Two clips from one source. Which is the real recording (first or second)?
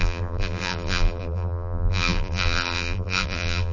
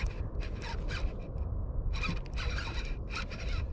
second